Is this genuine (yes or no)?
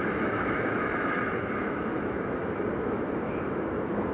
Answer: no